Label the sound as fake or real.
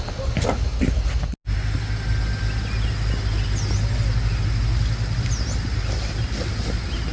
real